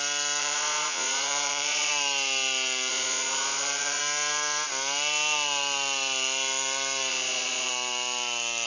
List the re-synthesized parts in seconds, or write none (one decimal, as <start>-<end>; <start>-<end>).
0.4-1.9; 2.9-4.0; 7.1-7.7